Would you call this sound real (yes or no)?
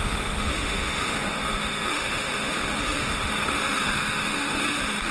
no